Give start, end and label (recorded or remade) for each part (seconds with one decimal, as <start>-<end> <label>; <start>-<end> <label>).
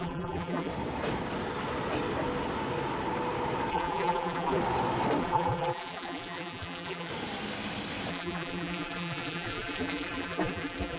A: 0.0-0.7 remade; 0.7-3.7 recorded; 3.7-4.6 remade; 4.6-5.2 recorded; 5.2-7.1 remade; 7.1-8.1 recorded; 8.1-11.0 remade